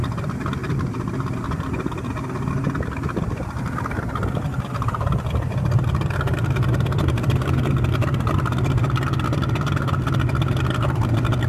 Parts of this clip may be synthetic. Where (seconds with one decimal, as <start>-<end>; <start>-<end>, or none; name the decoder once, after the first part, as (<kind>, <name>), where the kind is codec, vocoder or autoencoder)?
6.3-7.6 (vocoder, BigVGAN v2)